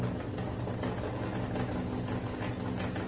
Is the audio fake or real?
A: real